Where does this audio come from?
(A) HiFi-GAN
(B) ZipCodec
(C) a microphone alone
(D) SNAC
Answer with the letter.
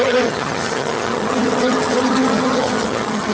A